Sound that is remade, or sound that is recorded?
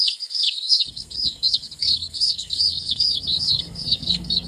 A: remade